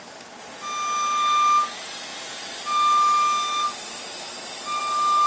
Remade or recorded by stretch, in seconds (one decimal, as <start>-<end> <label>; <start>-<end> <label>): 0.0-5.3 recorded